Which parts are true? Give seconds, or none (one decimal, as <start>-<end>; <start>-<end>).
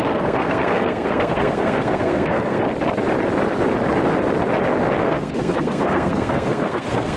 2.6-5.0